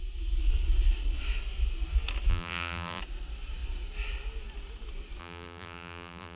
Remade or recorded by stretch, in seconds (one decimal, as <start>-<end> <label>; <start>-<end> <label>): 0.0-2.3 recorded; 2.3-3.0 remade; 3.0-5.2 recorded; 5.2-6.4 remade